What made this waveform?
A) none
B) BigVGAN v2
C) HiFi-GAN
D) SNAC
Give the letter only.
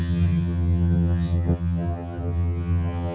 C